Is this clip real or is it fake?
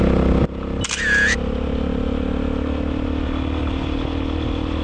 real